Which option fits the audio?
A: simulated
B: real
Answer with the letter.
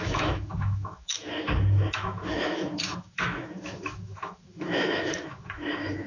A